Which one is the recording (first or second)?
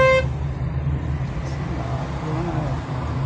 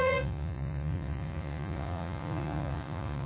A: first